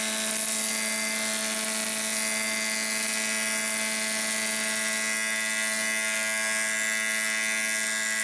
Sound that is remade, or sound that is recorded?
recorded